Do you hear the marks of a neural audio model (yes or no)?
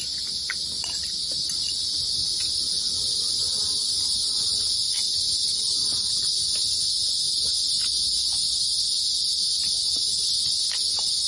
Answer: no